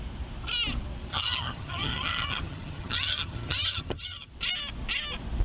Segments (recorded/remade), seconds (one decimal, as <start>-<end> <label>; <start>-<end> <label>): 0.0-1.1 recorded; 1.1-4.3 remade; 4.3-5.4 recorded